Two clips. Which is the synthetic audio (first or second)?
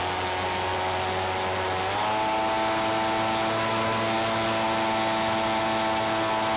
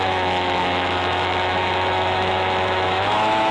second